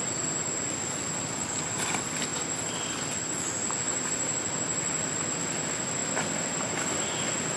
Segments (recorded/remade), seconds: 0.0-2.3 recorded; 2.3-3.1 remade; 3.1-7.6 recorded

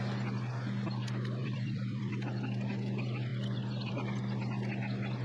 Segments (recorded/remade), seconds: 0.0-1.4 recorded; 1.4-2.1 remade; 2.1-5.2 recorded

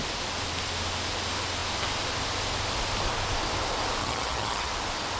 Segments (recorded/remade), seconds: 0.0-4.0 recorded; 4.0-4.7 remade; 4.7-5.2 recorded

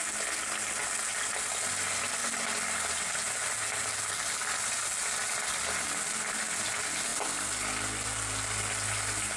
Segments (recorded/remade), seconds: 0.0-9.4 recorded

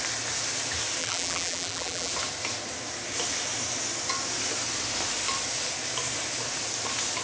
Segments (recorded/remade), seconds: 0.0-1.0 recorded; 1.0-2.1 remade; 2.1-7.2 recorded

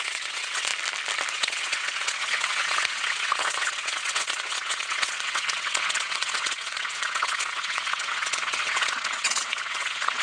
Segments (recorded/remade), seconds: 0.0-0.7 remade; 0.7-1.3 recorded; 1.3-10.2 remade